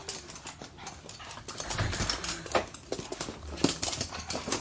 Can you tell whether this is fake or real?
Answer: real